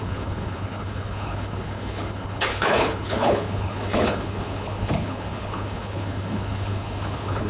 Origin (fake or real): fake